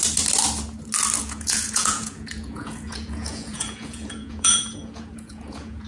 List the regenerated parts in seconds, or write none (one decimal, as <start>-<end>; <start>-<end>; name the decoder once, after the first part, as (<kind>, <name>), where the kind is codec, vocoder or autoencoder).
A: 1.2-5.9 (vocoder, Vocos)